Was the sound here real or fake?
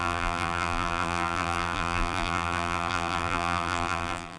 fake